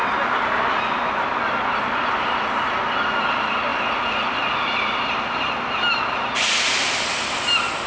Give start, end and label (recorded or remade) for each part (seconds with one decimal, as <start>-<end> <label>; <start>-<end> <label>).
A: 0.0-7.9 recorded